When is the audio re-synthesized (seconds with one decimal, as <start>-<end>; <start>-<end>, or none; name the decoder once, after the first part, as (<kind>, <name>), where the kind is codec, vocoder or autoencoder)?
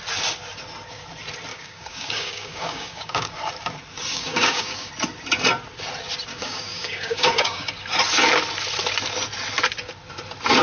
1.5-3.3 (codec, DAC); 4.1-4.9; 6.3-7.7